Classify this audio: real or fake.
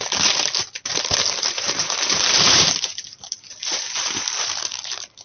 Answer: fake